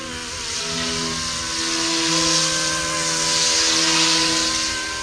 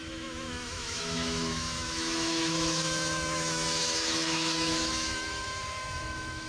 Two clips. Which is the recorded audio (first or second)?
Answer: first